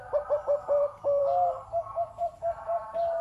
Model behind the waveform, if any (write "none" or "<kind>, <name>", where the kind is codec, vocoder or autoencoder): vocoder, BigVGAN v2